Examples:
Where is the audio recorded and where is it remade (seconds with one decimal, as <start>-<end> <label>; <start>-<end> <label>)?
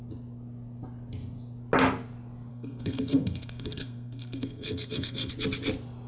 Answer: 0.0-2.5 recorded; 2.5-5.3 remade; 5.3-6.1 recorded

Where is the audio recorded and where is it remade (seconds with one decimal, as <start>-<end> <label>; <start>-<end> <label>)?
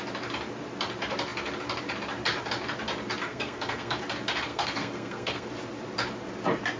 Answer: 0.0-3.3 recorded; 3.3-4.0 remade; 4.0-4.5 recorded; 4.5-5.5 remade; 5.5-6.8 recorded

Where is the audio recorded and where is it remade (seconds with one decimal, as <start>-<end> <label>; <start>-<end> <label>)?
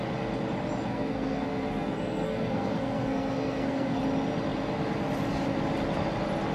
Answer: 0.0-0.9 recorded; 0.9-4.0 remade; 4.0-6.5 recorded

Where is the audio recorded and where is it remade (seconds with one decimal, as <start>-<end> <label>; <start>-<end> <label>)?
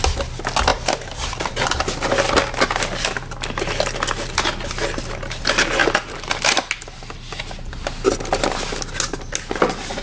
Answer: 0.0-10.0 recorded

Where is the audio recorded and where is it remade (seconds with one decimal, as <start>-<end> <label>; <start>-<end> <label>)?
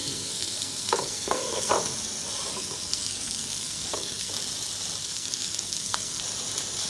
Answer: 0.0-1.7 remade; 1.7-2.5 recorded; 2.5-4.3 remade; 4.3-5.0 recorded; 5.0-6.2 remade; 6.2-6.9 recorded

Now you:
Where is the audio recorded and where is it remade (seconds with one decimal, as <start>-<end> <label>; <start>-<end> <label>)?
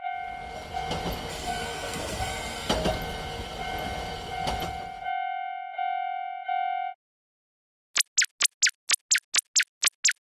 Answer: 0.0-1.3 recorded; 1.3-2.7 remade; 2.7-10.3 recorded